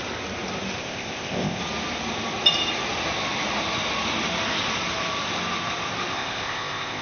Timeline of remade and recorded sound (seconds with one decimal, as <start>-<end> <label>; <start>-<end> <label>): 0.0-0.8 recorded; 0.8-1.6 remade; 1.6-6.1 recorded; 6.1-7.0 remade